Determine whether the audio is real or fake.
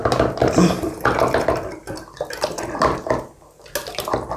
real